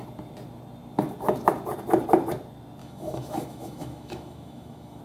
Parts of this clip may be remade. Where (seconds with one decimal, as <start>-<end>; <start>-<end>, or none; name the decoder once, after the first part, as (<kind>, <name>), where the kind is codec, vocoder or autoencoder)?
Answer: 2.8-5.0 (autoencoder, DAC-VAE)